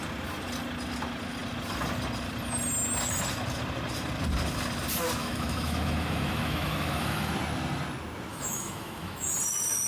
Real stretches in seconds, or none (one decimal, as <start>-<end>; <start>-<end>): 0.0-5.2; 7.3-8.3; 9.3-9.9